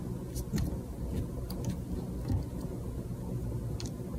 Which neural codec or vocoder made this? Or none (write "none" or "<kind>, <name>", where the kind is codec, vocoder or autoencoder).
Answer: none